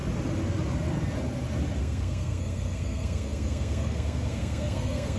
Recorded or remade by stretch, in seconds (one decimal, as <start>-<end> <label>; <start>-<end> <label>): 0.0-1.8 recorded; 1.8-5.2 remade

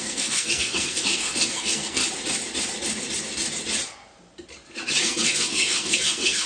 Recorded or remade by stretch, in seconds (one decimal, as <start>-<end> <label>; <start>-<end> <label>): 0.0-2.0 remade; 2.0-5.0 recorded; 5.0-6.5 remade

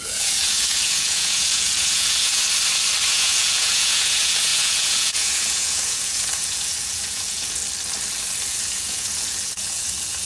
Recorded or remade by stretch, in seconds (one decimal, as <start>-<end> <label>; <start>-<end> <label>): 0.0-2.4 remade; 2.4-3.1 recorded; 3.1-7.6 remade; 7.6-8.5 recorded; 8.5-10.3 remade

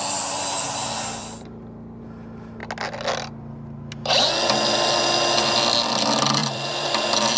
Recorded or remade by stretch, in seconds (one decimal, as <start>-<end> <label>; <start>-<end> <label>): 0.0-1.2 recorded; 1.2-2.0 remade; 2.0-6.4 recorded; 6.4-7.4 remade

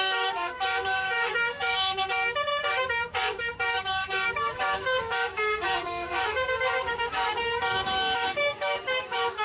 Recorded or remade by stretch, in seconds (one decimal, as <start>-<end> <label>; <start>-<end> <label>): 0.0-9.4 remade

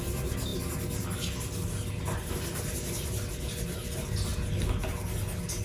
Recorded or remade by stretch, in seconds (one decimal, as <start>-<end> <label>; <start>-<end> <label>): 0.0-5.6 recorded

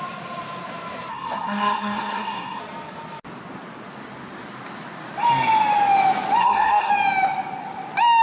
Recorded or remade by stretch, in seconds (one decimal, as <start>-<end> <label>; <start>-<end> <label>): 0.0-1.1 recorded; 1.1-2.6 remade; 2.6-6.4 recorded; 6.4-6.9 remade; 6.9-8.2 recorded

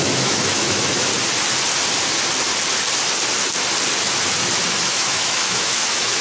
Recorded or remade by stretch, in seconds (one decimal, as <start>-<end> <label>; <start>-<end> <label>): 0.0-1.1 remade; 1.1-4.8 recorded; 4.8-6.2 remade